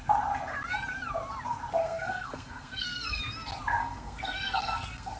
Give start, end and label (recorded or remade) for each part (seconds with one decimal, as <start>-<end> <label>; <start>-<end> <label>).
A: 0.0-1.8 recorded; 1.8-3.2 remade; 3.2-3.8 recorded; 3.8-5.2 remade